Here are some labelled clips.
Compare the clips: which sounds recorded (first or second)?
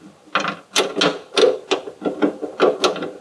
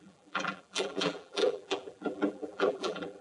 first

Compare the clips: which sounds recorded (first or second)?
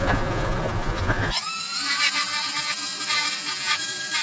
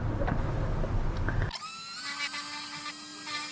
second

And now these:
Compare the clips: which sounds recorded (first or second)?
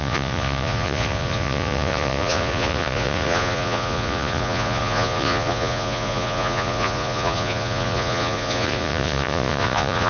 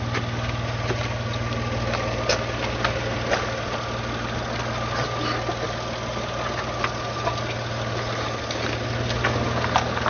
second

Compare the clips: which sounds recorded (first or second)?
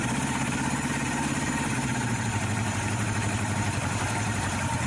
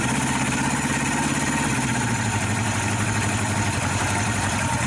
second